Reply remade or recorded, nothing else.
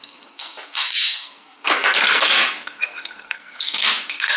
remade